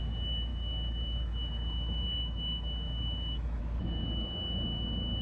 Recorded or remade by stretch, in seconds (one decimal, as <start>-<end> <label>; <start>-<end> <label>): 0.0-0.5 recorded; 0.5-3.6 remade; 3.6-5.2 recorded